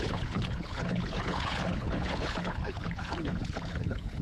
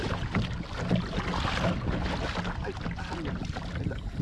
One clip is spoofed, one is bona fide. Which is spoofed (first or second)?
first